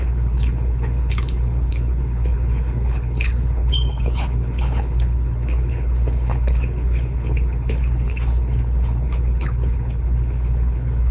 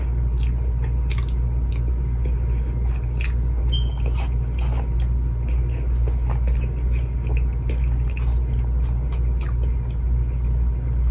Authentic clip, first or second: second